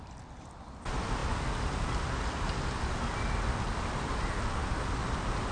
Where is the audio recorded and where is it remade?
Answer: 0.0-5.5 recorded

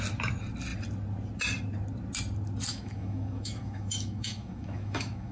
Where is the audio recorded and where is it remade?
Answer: 0.0-2.7 recorded; 2.7-5.3 remade

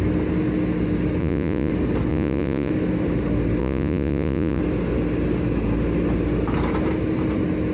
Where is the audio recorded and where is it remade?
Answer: 0.0-1.2 recorded; 1.2-1.7 remade; 1.7-2.1 recorded; 2.1-2.7 remade; 2.7-3.6 recorded; 3.6-4.6 remade; 4.6-7.7 recorded

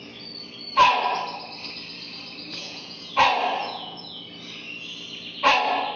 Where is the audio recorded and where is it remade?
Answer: 0.0-2.6 recorded; 2.6-3.1 remade; 3.1-3.6 recorded; 3.6-4.2 remade; 4.2-6.0 recorded

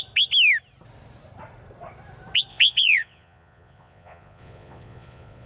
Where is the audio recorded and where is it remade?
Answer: 0.0-2.5 recorded; 2.5-5.5 remade

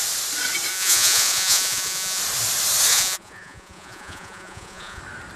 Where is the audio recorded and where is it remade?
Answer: 0.0-0.7 recorded; 0.7-2.2 remade; 2.2-2.9 recorded; 2.9-5.0 remade; 5.0-5.4 recorded

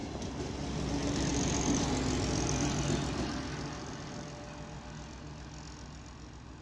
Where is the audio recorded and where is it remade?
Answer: 0.0-6.6 recorded

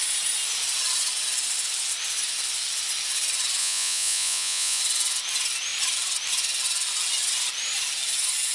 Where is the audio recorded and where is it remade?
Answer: 0.0-3.6 recorded; 3.6-4.8 remade; 4.8-8.5 recorded